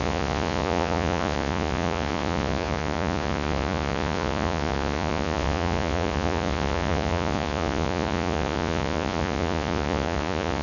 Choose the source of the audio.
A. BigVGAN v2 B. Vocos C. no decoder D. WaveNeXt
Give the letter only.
B